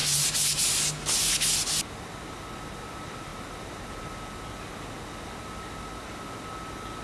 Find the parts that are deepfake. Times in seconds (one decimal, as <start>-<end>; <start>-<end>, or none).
none